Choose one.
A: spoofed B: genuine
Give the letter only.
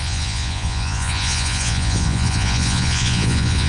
A